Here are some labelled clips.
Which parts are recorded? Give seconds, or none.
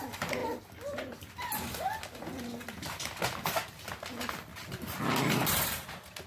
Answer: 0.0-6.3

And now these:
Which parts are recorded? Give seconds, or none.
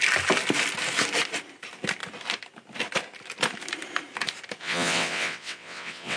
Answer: 0.0-4.6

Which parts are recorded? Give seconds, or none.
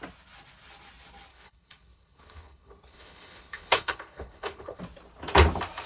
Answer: 0.0-1.3; 4.8-5.9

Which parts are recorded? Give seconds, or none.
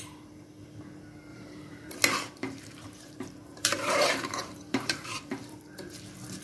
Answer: 0.0-1.3; 1.9-2.4; 5.6-6.4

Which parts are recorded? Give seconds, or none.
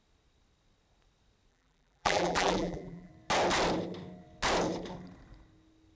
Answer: 0.0-1.5; 3.1-6.0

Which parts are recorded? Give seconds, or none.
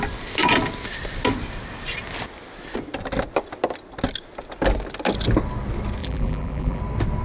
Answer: 0.0-6.0; 6.8-7.2